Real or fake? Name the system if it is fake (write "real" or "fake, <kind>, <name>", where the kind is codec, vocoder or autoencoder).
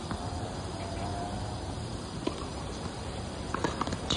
fake, vocoder, BigVGAN v2